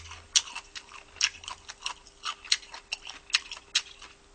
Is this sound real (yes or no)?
yes